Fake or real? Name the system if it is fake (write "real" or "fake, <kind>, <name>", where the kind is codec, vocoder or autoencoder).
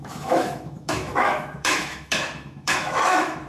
fake, autoencoder, DAC-VAE